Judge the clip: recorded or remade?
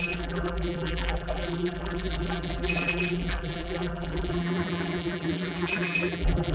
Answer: remade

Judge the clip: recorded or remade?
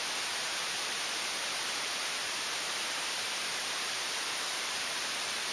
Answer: remade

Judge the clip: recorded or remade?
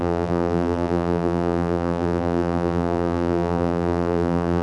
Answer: remade